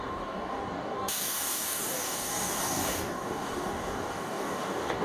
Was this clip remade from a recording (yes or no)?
yes